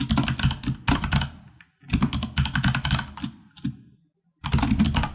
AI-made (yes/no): no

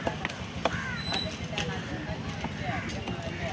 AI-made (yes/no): no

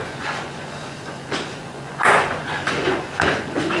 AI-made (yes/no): yes